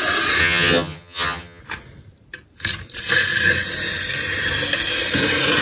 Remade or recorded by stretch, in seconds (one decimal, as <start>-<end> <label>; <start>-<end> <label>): 0.0-0.4 recorded; 0.4-1.6 remade; 1.6-5.6 recorded